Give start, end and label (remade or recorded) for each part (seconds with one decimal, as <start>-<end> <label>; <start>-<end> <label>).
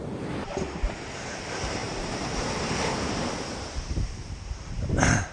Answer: 0.0-5.3 remade